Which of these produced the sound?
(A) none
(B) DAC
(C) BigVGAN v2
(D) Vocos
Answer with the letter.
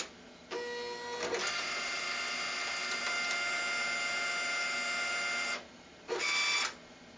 A